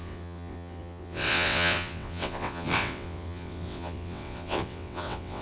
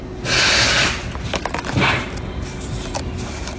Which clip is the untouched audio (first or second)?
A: second